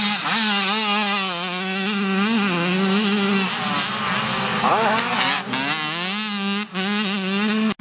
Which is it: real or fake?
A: real